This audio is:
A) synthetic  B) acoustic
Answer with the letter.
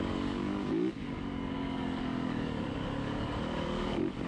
A